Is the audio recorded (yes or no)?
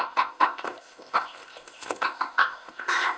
no